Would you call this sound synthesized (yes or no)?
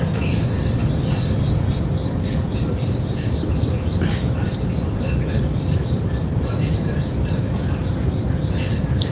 no